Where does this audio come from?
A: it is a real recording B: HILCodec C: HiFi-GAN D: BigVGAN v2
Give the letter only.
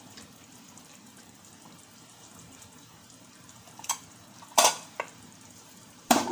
D